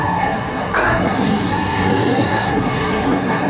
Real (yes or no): no